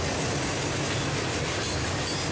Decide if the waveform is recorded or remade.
recorded